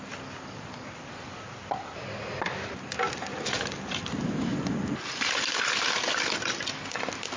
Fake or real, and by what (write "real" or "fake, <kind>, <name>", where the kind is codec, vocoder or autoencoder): real